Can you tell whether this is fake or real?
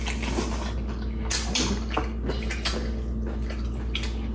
real